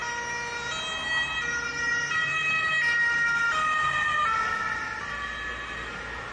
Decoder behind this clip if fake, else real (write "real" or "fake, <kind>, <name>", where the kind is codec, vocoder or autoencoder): real